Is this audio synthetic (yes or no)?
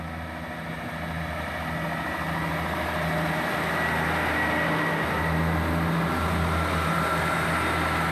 no